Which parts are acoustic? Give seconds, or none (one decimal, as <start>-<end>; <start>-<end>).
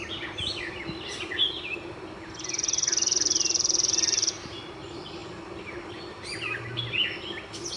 0.0-7.8